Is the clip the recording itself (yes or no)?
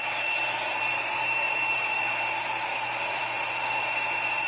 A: no